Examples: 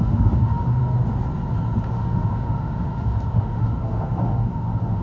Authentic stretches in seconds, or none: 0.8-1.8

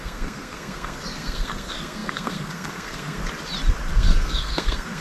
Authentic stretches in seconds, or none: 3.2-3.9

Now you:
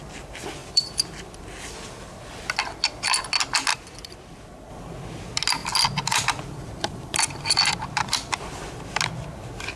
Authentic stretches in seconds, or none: 0.0-0.6; 1.4-3.7; 4.7-5.6; 9.0-9.8